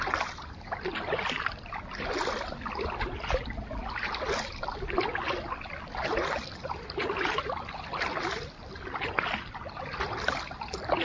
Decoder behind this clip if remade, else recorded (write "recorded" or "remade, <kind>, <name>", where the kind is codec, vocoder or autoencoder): recorded